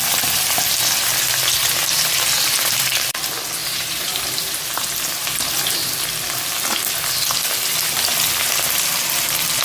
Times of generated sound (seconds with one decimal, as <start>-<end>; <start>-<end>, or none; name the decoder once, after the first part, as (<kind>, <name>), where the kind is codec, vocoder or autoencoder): 1.6-2.9 (vocoder, BigVGAN v2); 3.6-4.6